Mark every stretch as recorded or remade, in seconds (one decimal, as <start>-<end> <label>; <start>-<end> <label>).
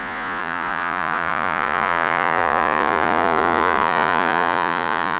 0.0-5.2 remade